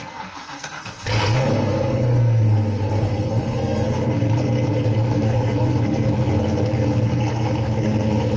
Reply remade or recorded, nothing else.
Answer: remade